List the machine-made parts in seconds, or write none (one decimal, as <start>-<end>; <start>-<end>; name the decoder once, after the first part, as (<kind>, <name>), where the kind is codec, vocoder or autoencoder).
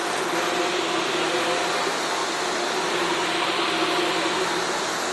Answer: none